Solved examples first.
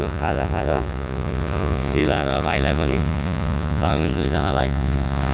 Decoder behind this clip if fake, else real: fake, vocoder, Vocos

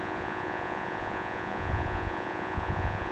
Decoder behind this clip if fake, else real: fake, vocoder, Vocos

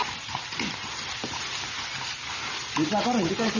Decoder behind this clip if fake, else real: real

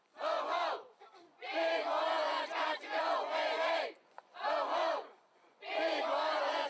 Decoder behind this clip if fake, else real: fake, vocoder, Vocos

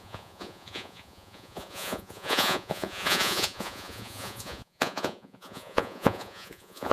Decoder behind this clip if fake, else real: fake, vocoder, Vocos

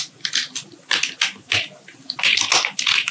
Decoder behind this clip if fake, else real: real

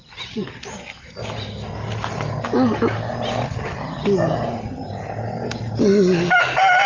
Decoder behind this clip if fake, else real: real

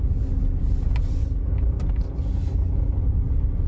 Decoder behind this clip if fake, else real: real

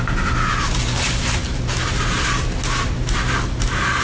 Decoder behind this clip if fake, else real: real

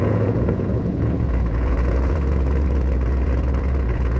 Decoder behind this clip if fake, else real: fake, vocoder, Vocos